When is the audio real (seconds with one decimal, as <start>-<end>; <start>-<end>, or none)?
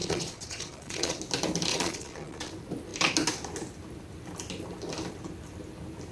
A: 1.2-1.7; 2.5-6.1